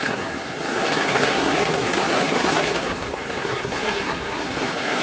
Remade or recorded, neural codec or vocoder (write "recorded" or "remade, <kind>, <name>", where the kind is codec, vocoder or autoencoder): remade, codec, SNAC